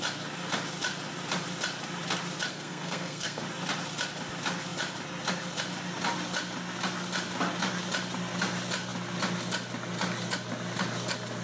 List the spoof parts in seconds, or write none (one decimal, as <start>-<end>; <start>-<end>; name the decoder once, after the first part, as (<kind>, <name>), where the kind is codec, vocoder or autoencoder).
2.5-3.4 (codec, SNAC)